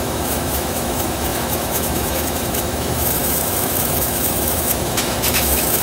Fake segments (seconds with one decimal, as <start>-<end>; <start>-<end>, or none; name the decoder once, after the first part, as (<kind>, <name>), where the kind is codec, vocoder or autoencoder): 0.0-5.8 (autoencoder, DAC-VAE)